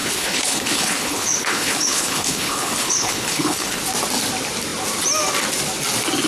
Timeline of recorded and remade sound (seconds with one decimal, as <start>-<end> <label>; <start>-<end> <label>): 0.0-3.8 remade; 3.8-6.3 recorded